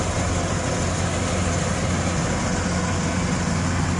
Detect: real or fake real